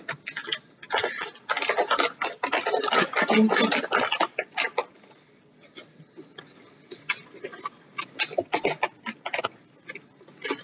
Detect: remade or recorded recorded